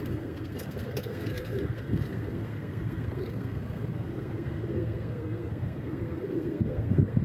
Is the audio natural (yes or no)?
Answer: no